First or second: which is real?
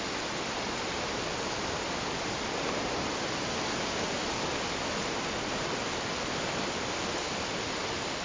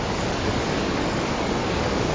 first